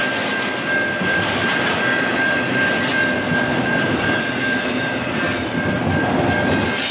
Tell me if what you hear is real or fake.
real